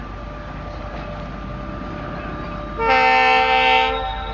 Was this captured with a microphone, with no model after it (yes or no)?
yes